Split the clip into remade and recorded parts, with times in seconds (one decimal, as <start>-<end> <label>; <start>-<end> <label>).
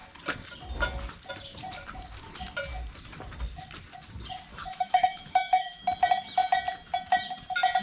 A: 0.0-4.5 recorded; 4.5-5.8 remade; 5.8-7.8 recorded